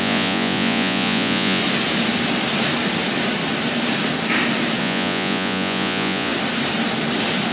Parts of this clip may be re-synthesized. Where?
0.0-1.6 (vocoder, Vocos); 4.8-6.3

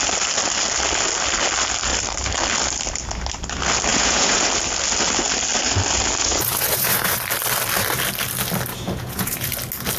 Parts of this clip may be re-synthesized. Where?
3.9-4.5 (vocoder, Vocos); 6.2-7.2; 8.7-9.5